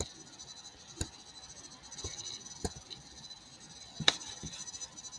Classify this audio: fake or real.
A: real